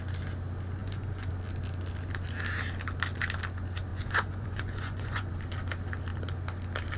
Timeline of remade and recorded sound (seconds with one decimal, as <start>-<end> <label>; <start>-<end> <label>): 0.0-0.8 recorded; 0.8-1.3 remade; 1.3-3.9 recorded; 3.9-5.3 remade; 5.3-7.0 recorded